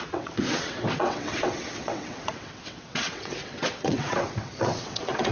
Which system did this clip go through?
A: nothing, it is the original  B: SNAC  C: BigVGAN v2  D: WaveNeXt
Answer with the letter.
D